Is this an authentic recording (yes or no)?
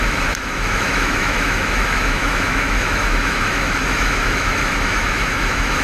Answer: no